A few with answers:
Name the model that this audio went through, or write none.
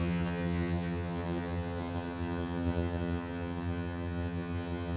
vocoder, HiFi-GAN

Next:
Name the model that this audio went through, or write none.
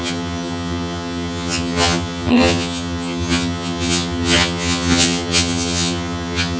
vocoder, HiFi-GAN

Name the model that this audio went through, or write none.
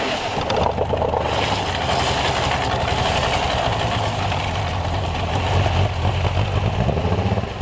none